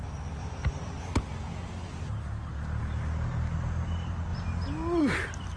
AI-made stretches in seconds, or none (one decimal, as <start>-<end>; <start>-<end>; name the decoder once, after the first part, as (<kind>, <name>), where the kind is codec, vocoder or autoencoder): none